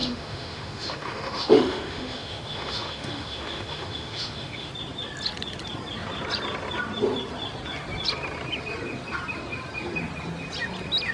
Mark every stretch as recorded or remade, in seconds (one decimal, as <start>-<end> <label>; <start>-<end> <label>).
0.0-4.7 remade; 4.7-11.1 recorded